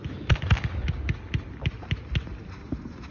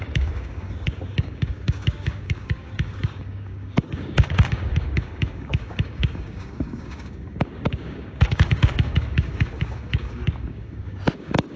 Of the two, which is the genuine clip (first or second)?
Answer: first